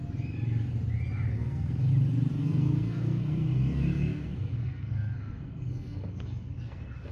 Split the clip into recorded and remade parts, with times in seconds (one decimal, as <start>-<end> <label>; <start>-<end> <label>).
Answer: 0.0-1.3 recorded; 1.3-1.9 remade; 1.9-2.4 recorded; 2.4-7.1 remade